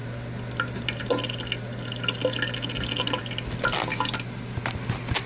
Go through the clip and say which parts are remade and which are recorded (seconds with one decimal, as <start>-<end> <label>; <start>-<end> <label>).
0.0-5.3 recorded